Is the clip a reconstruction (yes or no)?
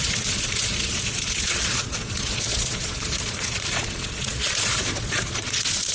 yes